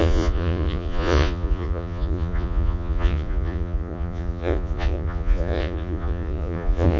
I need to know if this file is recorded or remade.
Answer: remade